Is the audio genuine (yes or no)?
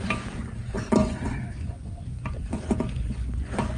no